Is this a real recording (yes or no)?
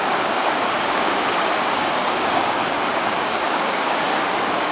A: no